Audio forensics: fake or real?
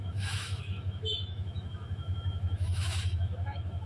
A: fake